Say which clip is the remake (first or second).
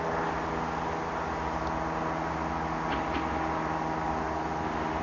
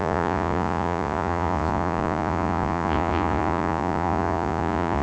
second